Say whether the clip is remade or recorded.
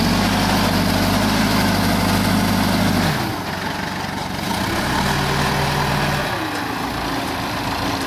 recorded